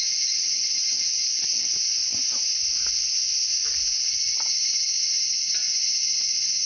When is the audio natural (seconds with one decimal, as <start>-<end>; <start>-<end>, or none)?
0.0-6.7